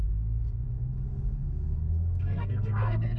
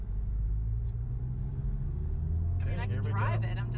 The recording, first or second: second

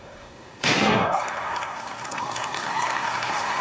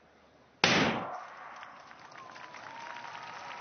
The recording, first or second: second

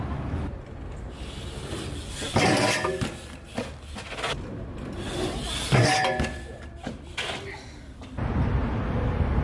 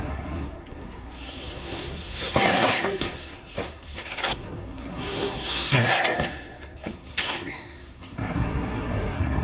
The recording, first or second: first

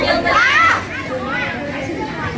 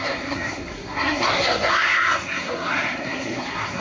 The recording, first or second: first